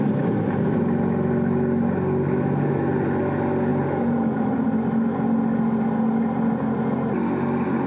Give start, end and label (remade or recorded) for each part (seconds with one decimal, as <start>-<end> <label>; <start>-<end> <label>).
0.0-3.7 recorded; 3.7-4.5 remade; 4.5-7.9 recorded